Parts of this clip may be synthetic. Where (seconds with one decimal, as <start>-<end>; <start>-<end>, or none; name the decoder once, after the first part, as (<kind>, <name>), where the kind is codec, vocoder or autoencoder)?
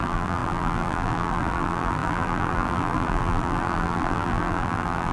0.0-5.1 (vocoder, BigVGAN v2)